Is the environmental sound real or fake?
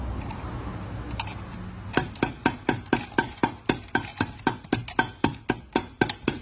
real